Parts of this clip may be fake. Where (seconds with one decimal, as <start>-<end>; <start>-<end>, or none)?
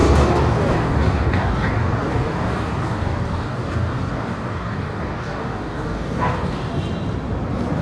0.0-6.7